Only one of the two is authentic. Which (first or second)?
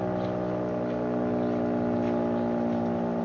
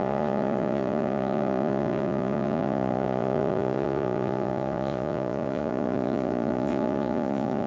first